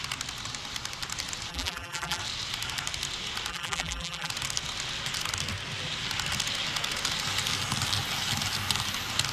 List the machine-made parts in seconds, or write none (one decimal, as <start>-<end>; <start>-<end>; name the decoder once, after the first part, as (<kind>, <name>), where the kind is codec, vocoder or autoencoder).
1.5-2.2 (vocoder, BigVGAN v2); 3.5-4.3